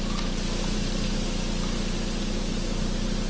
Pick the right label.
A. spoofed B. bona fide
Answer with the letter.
B